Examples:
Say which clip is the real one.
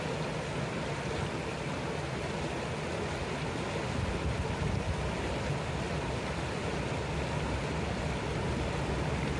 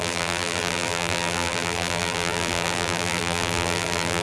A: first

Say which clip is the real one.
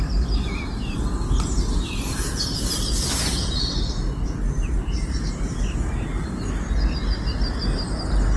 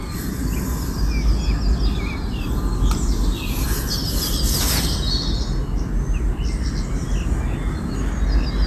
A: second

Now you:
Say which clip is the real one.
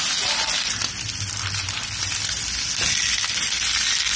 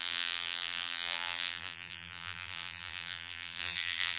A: first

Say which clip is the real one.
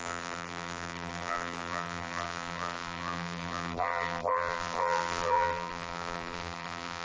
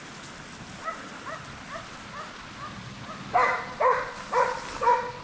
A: second